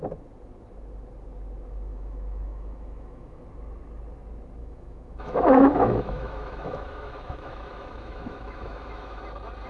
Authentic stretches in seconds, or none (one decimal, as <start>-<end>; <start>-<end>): 0.0-1.9; 3.4-4.6; 9.2-9.7